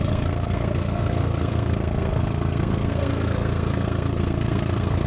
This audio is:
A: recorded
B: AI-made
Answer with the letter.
B